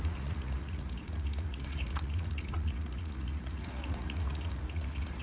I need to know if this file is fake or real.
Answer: fake